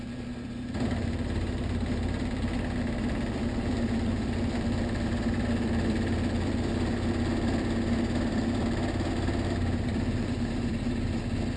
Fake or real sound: fake